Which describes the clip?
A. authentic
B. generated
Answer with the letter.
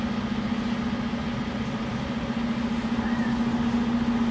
A